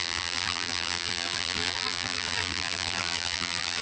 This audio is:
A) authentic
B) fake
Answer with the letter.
B